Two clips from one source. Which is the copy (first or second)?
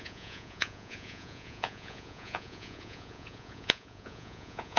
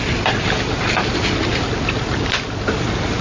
first